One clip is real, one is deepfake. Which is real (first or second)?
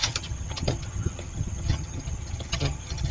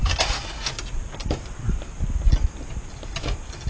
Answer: second